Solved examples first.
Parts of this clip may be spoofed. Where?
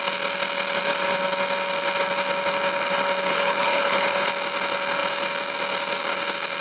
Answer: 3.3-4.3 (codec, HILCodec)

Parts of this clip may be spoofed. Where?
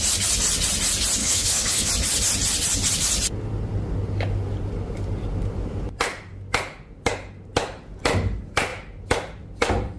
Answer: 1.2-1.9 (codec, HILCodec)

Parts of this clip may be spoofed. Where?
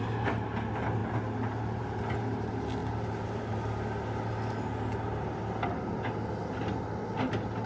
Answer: none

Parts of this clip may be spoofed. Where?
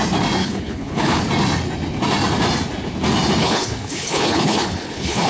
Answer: 0.4-1.2 (codec, HILCodec); 3.4-5.3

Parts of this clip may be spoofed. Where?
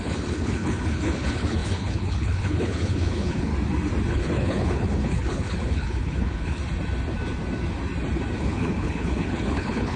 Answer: 0.0-3.5 (codec, HILCodec); 4.1-6.6; 8.4-10.0